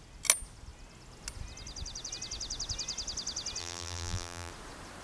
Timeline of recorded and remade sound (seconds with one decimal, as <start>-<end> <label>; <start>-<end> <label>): 0.0-3.6 recorded; 3.6-4.5 remade; 4.5-5.0 recorded